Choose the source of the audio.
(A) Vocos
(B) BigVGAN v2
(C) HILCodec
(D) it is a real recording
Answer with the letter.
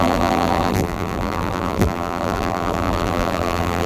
B